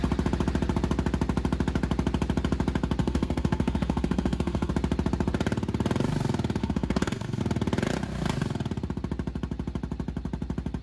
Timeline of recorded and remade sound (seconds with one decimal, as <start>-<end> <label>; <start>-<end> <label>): 0.0-3.0 recorded; 3.0-4.7 remade; 4.7-6.6 recorded; 6.6-7.4 remade; 7.4-10.8 recorded